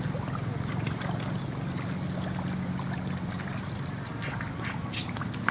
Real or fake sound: real